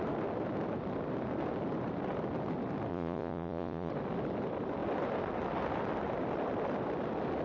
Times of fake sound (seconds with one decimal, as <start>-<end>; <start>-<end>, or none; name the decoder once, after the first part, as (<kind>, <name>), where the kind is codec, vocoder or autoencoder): 2.9-3.9 (vocoder, Vocos)